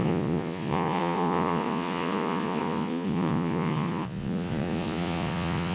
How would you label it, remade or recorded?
remade